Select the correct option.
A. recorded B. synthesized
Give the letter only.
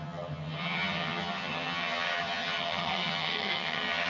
B